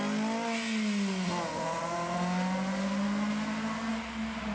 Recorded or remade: recorded